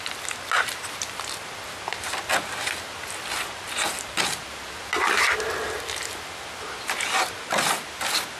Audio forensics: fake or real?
real